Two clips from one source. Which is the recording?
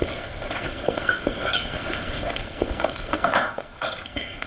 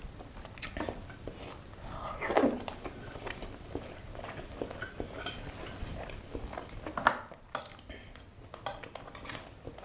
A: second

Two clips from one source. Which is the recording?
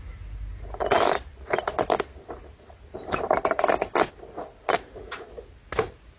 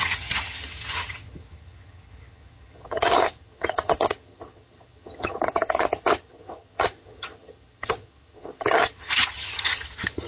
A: first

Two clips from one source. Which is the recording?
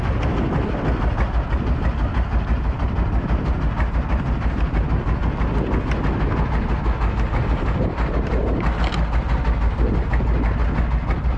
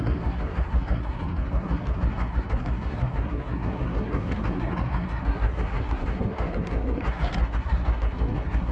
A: first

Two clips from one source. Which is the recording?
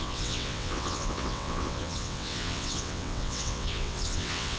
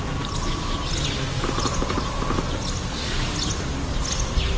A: second